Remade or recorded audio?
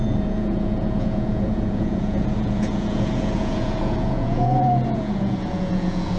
remade